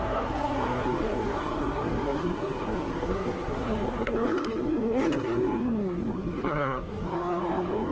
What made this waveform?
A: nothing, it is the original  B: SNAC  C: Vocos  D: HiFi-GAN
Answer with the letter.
B